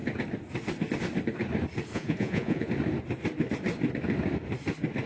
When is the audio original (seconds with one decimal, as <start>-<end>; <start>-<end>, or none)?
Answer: 0.0-1.9; 2.7-5.1